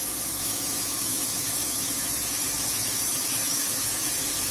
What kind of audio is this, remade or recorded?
remade